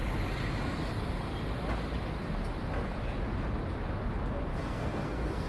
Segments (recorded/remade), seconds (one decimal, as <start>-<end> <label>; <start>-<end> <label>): 0.0-4.5 recorded; 4.5-5.5 remade